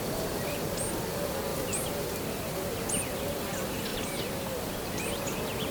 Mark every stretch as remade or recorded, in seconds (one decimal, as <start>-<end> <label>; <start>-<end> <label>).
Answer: 0.0-5.7 recorded